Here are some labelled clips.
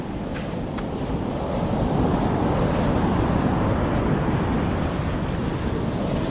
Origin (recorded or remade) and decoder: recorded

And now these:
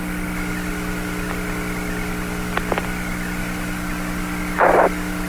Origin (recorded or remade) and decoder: recorded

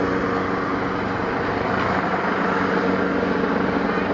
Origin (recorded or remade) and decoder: recorded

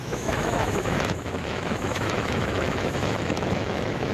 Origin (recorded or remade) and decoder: remade, autoencoder, DAC-VAE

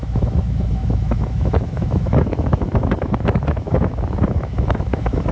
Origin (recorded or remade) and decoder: remade, autoencoder, DAC-VAE